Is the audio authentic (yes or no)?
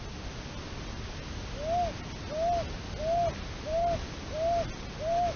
yes